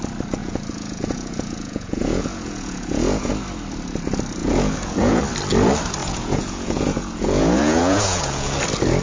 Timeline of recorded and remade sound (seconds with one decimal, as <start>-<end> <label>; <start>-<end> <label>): 0.0-0.4 recorded; 0.4-3.3 remade; 3.3-4.4 recorded; 4.4-5.2 remade; 5.2-6.0 recorded; 6.0-8.6 remade; 8.6-9.0 recorded